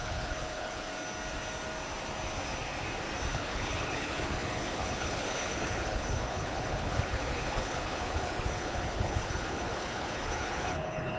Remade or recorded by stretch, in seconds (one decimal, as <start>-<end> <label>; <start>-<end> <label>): 0.0-0.9 remade; 0.9-3.3 recorded; 3.3-11.2 remade